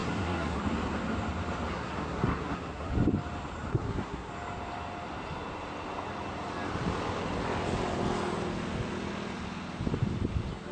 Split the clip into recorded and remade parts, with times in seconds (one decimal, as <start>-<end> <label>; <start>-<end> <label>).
0.0-0.6 remade; 0.6-1.7 recorded; 1.7-2.9 remade; 2.9-3.7 recorded; 3.7-4.3 remade; 4.3-10.7 recorded

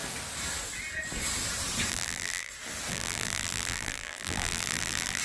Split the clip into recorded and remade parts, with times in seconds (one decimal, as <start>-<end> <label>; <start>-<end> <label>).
0.0-1.9 recorded; 1.9-2.5 remade; 2.5-2.9 recorded; 2.9-5.2 remade

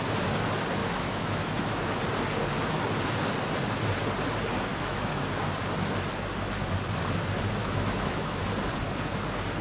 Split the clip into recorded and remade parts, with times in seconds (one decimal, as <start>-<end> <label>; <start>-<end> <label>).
0.0-0.8 recorded; 0.8-2.0 remade; 2.0-4.7 recorded; 4.7-5.5 remade; 5.5-7.6 recorded; 7.6-8.4 remade; 8.4-9.6 recorded

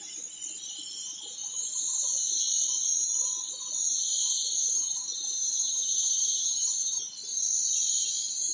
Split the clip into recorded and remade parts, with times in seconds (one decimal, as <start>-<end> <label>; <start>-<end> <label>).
0.0-4.6 recorded; 4.6-7.0 remade; 7.0-8.5 recorded